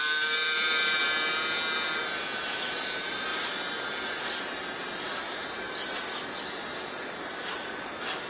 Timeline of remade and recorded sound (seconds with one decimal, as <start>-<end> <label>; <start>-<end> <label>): 0.0-1.0 remade; 1.0-2.5 recorded; 2.5-8.3 remade